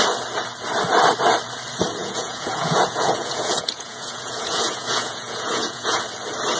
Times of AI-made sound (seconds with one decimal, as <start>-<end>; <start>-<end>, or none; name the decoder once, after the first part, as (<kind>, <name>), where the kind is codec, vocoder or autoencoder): 2.0-6.0 (vocoder, Vocos)